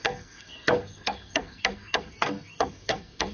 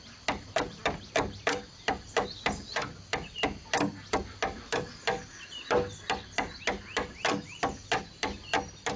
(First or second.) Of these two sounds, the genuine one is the second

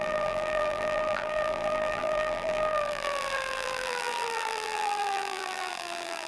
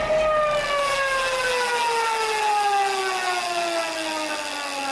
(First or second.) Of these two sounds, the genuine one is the second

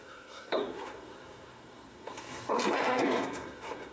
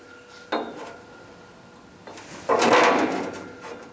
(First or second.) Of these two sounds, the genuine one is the second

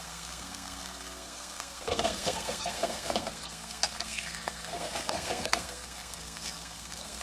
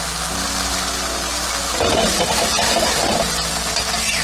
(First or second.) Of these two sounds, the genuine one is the second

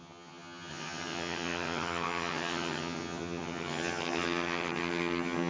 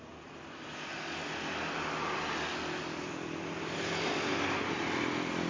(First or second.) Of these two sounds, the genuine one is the second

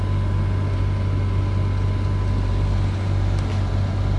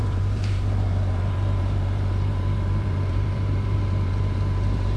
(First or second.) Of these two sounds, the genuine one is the first